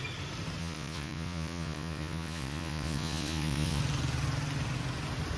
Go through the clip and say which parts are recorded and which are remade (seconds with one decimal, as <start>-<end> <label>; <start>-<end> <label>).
0.0-0.6 recorded; 0.6-3.8 remade; 3.8-5.4 recorded

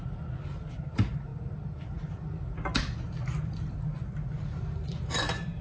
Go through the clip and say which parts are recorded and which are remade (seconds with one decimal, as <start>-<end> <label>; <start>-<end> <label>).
0.0-5.6 recorded

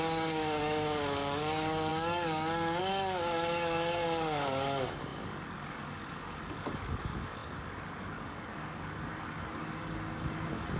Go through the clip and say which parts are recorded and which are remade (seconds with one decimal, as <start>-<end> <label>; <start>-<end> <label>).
0.0-10.8 remade

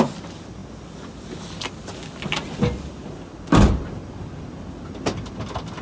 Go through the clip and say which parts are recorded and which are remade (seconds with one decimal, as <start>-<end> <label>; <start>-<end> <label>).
0.0-5.8 recorded

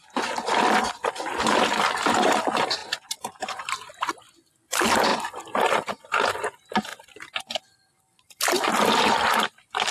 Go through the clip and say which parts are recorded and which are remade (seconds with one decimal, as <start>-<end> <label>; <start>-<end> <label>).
0.0-5.1 remade; 5.1-5.9 recorded; 5.9-9.9 remade

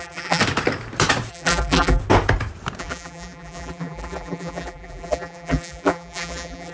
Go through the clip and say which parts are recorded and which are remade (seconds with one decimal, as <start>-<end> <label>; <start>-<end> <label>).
0.0-0.4 remade; 0.4-1.3 recorded; 1.3-2.0 remade; 2.0-2.8 recorded; 2.8-6.7 remade

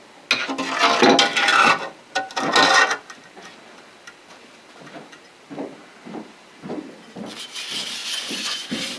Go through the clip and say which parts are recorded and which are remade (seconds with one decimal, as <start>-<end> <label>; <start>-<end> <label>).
0.0-8.0 recorded; 8.0-9.0 remade

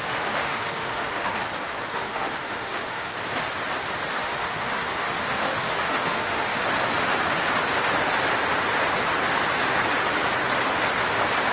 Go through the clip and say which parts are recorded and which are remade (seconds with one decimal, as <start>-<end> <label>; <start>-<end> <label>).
0.0-1.3 remade; 1.3-1.9 recorded; 1.9-3.1 remade; 3.1-4.1 recorded; 4.1-6.6 remade; 6.6-11.5 recorded